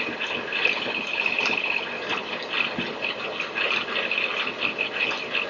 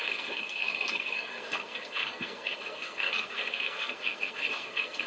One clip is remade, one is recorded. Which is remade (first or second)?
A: second